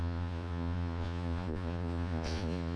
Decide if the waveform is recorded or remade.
remade